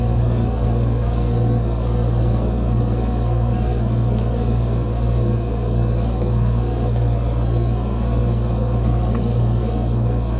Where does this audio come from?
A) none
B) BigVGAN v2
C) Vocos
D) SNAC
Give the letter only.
D